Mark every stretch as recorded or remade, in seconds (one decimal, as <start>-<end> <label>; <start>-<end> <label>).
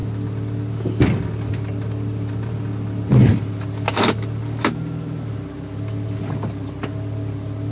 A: 0.0-7.7 recorded